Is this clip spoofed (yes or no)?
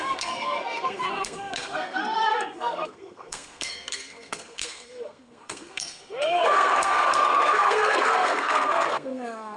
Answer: yes